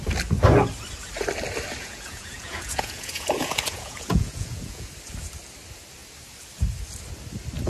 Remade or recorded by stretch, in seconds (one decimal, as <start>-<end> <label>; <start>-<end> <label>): 0.0-1.8 recorded; 1.8-4.9 remade; 4.9-7.7 recorded